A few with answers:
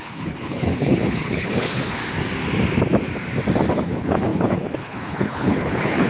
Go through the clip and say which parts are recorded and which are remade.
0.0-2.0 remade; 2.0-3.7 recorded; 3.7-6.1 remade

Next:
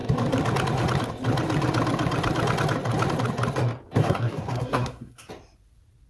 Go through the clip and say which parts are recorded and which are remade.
0.0-4.0 recorded; 4.0-5.3 remade; 5.3-6.1 recorded

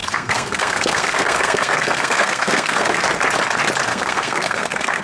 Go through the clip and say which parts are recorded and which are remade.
0.0-3.0 remade; 3.0-3.9 recorded; 3.9-5.0 remade

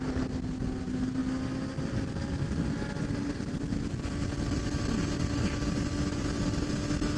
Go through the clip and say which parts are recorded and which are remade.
0.0-7.2 recorded

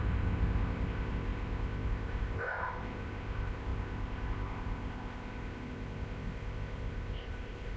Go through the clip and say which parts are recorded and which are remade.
0.0-7.8 remade